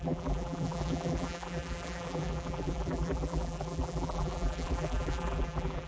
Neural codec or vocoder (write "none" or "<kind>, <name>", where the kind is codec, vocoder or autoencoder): vocoder, BigVGAN v2